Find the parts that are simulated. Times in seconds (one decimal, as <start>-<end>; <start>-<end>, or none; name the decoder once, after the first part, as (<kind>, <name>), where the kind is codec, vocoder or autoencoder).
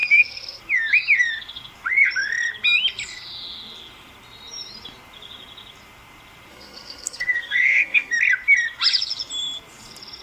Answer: 0.0-0.6 (codec, SNAC); 6.5-8.1